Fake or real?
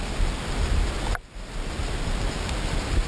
real